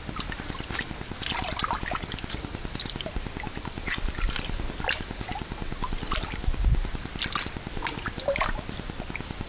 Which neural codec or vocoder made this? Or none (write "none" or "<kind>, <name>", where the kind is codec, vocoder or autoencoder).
none